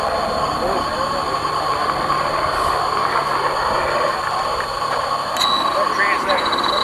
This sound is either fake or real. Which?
real